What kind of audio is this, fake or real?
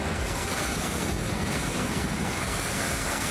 fake